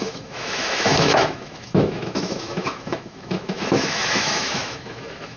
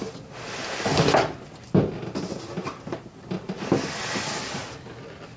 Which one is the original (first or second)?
second